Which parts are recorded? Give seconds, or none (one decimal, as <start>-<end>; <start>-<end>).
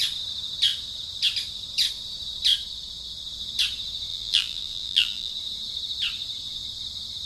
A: 0.0-4.1; 5.3-7.3